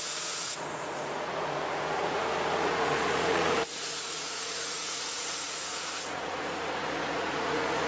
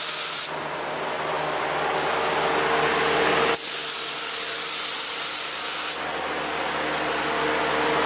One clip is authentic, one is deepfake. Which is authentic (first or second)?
second